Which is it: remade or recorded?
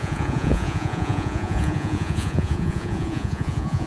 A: remade